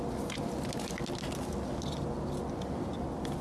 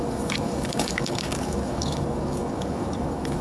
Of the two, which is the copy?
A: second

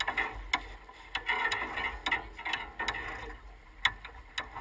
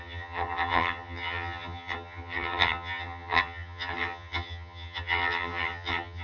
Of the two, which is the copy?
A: second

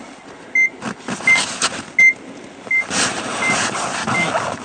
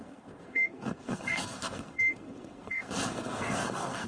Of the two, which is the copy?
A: second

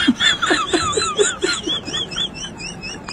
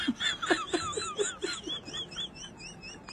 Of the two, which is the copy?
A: first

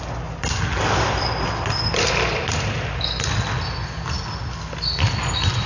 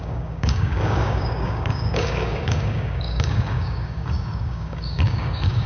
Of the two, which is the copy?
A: second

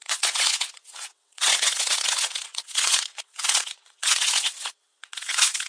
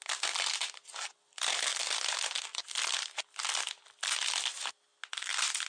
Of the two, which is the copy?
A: first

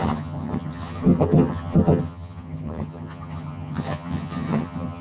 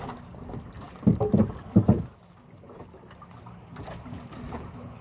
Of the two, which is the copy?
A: first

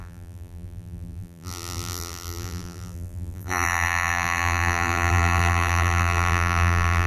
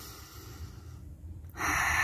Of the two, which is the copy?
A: first